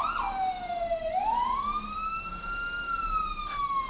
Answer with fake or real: real